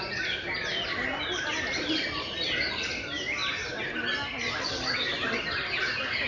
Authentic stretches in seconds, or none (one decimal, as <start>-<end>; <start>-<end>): 0.0-6.3